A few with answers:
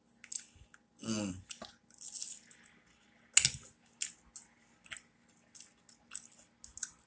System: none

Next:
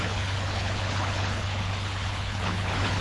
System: codec, HILCodec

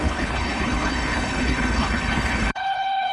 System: codec, HILCodec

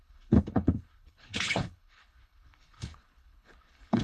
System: codec, HILCodec